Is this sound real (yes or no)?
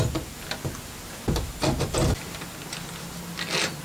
yes